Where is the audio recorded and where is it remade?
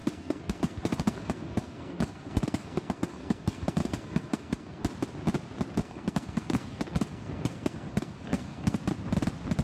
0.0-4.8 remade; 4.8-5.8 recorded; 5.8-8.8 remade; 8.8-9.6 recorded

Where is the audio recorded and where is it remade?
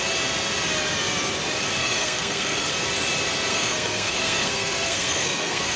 0.0-1.8 recorded; 1.8-2.7 remade; 2.7-3.5 recorded; 3.5-5.8 remade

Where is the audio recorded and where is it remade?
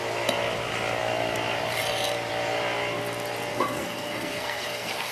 0.0-3.5 recorded; 3.5-5.1 remade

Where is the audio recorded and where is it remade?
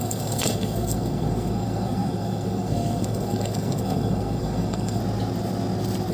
0.0-5.0 remade; 5.0-6.1 recorded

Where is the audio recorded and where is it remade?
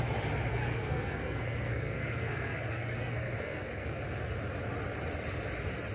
0.0-0.5 recorded; 0.5-4.0 remade; 4.0-5.9 recorded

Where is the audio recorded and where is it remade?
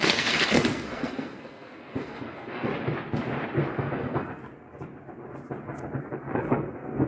0.0-2.7 remade; 2.7-3.7 recorded; 3.7-4.4 remade; 4.4-6.0 recorded; 6.0-7.1 remade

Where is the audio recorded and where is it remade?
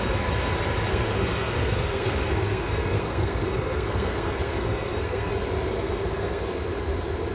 0.0-0.9 recorded; 0.9-5.3 remade; 5.3-5.7 recorded; 5.7-6.4 remade; 6.4-7.3 recorded